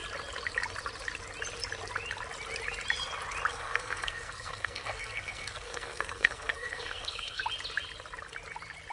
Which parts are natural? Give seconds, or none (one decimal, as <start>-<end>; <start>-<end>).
0.0-3.5; 7.4-8.9